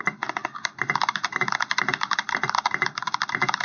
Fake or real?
real